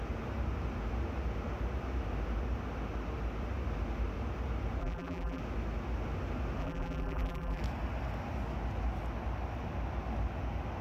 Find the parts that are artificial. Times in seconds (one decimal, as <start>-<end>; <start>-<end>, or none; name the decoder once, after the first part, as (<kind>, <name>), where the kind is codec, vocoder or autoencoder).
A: 4.8-5.4 (vocoder, BigVGAN v2); 6.6-7.6